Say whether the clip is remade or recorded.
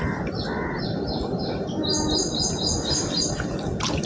recorded